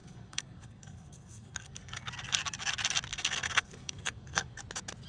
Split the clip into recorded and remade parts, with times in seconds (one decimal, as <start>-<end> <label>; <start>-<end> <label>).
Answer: 0.0-2.1 remade; 2.1-3.1 recorded; 3.1-4.6 remade; 4.6-5.1 recorded